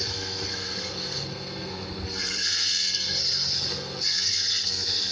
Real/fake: fake